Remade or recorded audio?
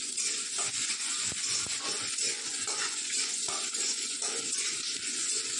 remade